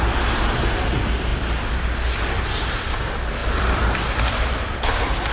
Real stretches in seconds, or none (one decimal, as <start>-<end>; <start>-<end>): 0.0-3.4